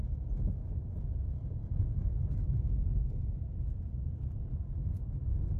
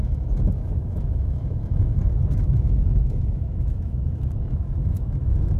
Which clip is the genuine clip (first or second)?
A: first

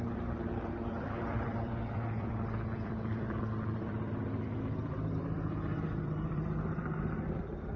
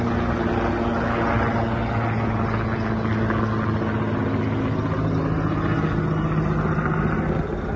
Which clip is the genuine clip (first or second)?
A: second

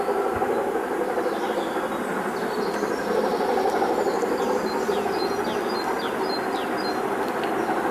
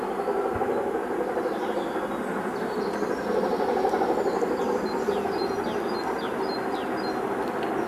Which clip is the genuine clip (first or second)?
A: second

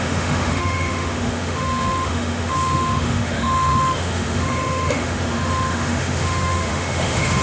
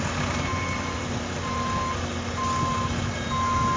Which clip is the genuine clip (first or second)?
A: second